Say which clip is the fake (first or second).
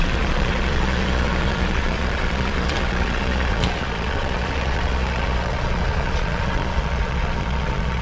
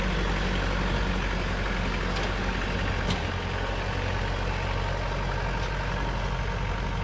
first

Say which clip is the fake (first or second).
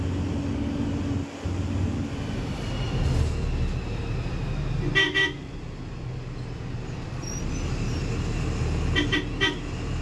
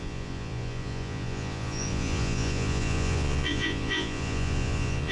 second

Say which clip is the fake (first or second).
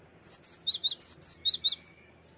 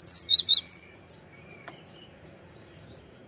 second